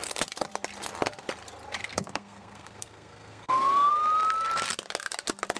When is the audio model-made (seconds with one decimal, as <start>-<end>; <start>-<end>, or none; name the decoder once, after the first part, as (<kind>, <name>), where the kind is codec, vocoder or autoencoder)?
1.8-3.9 (codec, SNAC)